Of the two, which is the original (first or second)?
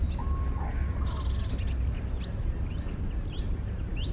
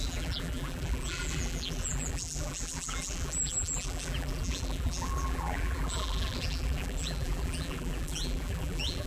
first